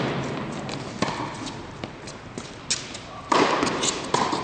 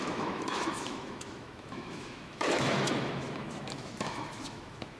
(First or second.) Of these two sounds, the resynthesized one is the second